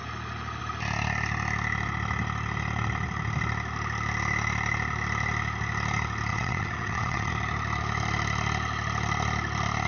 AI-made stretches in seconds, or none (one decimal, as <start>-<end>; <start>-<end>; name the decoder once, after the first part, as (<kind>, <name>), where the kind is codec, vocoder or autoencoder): 6.3-7.3 (vocoder, WaveNeXt)